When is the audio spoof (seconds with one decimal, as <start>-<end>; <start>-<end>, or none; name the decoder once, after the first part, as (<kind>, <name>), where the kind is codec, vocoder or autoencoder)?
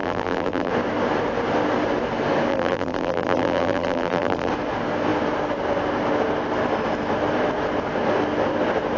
0.0-0.7 (vocoder, BigVGAN v2); 2.5-4.5